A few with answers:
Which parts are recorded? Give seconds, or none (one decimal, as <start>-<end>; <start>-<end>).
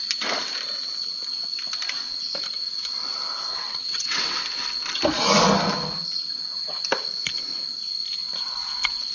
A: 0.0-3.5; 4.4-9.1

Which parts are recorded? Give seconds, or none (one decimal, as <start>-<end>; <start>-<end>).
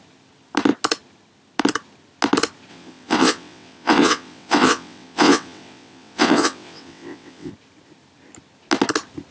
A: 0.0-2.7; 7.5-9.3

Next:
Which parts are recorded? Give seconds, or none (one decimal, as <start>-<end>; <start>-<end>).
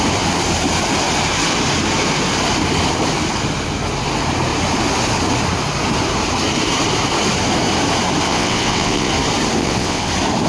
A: 0.0-8.3; 9.1-9.6; 10.1-10.5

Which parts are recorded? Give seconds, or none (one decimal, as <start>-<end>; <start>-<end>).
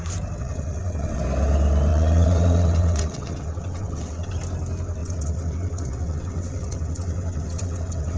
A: 0.0-0.4; 1.2-1.9; 4.3-5.0